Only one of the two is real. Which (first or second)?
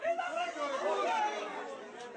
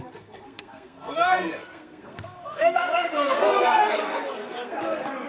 first